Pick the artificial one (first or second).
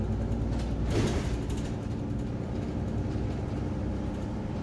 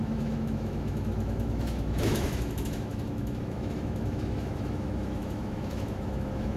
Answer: second